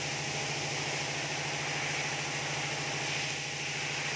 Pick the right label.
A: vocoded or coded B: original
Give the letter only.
B